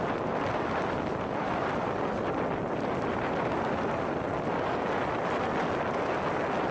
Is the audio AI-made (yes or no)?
no